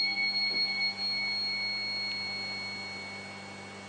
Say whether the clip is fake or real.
real